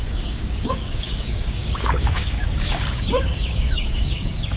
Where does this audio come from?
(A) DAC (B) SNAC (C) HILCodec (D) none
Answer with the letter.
A